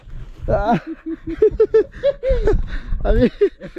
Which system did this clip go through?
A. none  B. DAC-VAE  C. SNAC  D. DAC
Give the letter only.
A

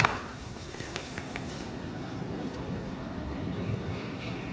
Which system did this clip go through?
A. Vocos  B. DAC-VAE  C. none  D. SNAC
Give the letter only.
D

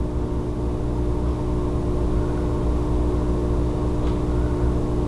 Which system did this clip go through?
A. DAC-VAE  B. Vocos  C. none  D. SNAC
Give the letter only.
C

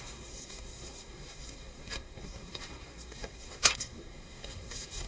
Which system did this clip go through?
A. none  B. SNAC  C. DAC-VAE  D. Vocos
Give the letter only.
B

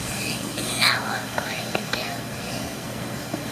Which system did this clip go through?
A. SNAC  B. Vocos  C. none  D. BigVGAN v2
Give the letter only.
A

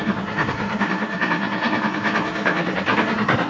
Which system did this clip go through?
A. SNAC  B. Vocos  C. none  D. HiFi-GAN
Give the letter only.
A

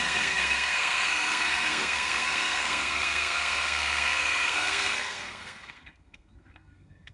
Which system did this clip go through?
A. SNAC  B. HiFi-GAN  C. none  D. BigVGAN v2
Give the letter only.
A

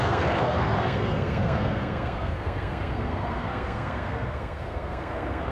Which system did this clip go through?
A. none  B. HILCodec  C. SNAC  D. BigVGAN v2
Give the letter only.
C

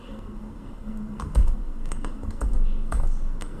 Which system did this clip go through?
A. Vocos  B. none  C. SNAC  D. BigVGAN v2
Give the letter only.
C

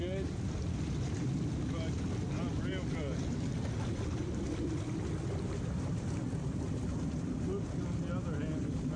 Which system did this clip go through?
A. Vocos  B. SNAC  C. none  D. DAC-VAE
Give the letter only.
C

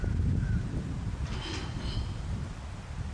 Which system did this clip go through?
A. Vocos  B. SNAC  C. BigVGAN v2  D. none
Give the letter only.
D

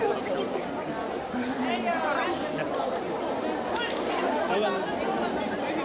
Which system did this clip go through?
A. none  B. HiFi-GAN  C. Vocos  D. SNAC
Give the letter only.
A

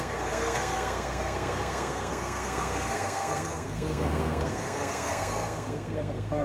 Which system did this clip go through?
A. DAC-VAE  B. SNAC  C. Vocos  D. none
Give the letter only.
B